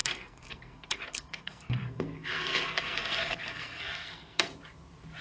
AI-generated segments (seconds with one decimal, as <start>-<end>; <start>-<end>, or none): 0.0-4.5